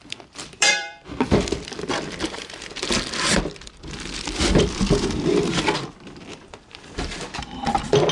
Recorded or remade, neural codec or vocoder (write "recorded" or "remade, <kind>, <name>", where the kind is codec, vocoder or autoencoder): remade, vocoder, BigVGAN v2